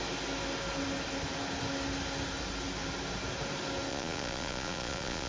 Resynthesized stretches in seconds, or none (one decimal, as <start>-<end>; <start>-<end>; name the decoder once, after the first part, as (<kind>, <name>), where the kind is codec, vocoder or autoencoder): 3.9-5.3 (vocoder, Vocos)